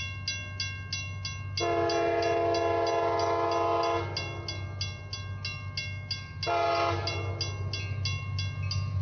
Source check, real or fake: real